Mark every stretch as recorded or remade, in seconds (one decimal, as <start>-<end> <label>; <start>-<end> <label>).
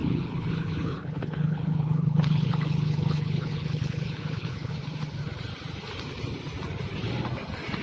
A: 0.0-4.7 remade; 4.7-7.8 recorded